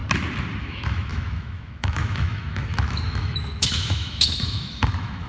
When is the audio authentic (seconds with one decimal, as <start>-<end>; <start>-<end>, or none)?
0.0-0.6